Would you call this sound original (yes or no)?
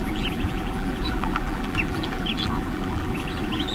no